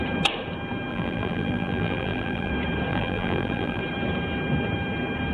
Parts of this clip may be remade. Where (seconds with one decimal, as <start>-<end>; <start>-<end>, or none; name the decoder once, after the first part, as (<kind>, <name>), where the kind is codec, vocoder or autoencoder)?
0.9-2.5 (vocoder, BigVGAN v2); 2.9-3.8